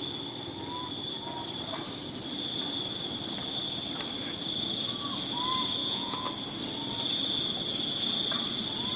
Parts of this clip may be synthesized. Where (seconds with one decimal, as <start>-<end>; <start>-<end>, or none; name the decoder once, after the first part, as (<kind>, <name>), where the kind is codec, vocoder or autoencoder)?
5.8-6.3 (vocoder, Vocos)